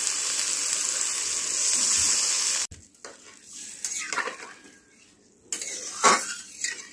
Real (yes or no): yes